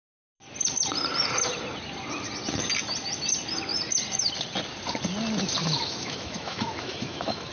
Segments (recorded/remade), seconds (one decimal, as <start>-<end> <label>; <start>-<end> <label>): 0.0-5.6 recorded; 5.6-7.5 remade